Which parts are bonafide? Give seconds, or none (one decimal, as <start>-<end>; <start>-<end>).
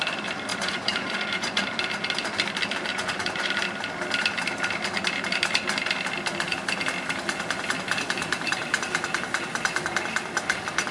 0.0-0.5; 1.6-2.9; 3.5-10.9